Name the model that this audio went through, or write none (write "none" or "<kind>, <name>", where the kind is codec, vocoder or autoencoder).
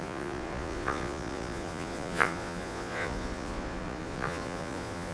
vocoder, Vocos